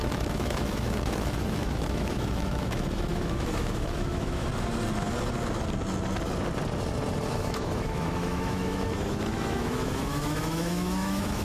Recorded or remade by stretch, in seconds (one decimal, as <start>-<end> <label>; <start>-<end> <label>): 0.0-4.5 remade; 4.5-7.3 recorded; 7.3-11.4 remade